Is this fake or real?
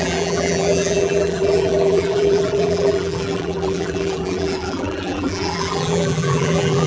fake